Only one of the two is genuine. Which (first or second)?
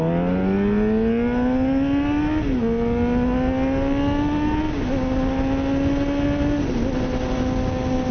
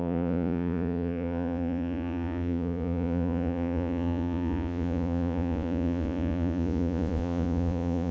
first